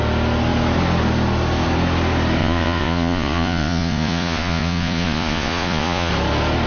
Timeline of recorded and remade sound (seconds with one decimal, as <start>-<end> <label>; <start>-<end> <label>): 0.0-2.4 recorded; 2.4-6.1 remade; 6.1-6.7 recorded